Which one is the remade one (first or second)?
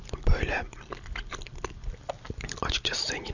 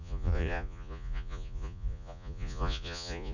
second